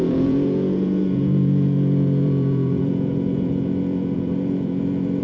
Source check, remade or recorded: remade